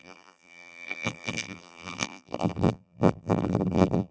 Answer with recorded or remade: remade